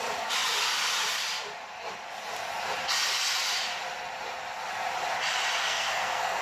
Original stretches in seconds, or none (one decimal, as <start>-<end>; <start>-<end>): 0.0-5.6